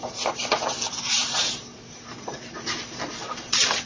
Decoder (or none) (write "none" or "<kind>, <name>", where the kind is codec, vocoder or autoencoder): vocoder, BigVGAN v2